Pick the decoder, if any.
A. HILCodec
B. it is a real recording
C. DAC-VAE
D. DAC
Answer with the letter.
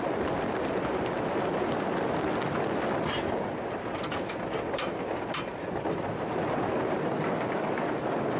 B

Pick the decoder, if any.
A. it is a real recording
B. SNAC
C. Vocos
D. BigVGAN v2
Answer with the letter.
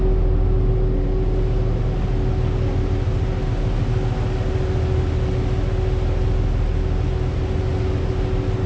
A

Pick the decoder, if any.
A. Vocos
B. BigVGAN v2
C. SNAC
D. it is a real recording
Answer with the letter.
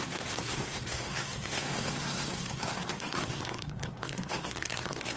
C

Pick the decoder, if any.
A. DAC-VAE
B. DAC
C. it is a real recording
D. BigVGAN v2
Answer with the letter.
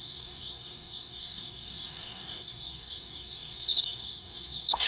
B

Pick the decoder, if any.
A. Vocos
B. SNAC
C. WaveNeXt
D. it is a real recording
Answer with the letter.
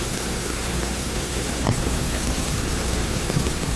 B